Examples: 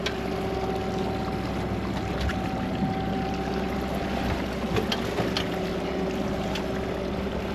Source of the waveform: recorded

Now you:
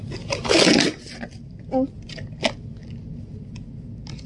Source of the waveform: recorded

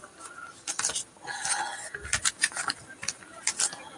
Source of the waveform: recorded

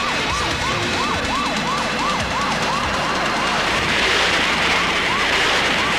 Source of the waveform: remade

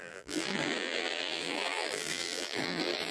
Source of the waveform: remade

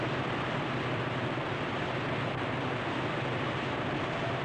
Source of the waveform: remade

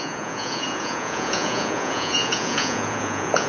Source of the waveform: remade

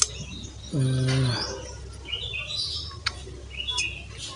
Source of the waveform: recorded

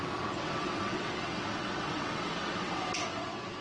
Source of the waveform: remade